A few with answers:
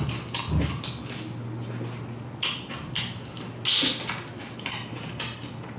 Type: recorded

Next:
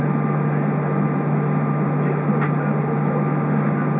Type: recorded